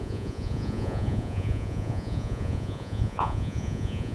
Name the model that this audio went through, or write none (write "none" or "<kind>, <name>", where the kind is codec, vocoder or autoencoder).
vocoder, Vocos